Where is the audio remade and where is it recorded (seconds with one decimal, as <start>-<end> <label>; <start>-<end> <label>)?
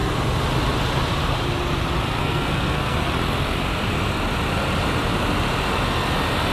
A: 0.0-2.2 recorded; 2.2-3.1 remade; 3.1-6.5 recorded